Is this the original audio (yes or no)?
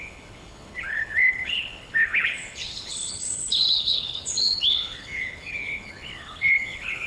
no